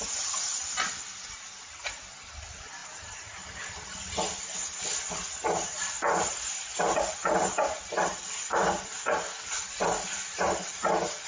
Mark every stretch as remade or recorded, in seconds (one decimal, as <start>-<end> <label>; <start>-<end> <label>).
0.0-11.3 recorded